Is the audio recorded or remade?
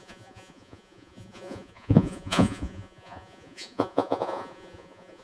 remade